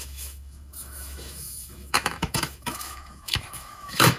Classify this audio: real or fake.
fake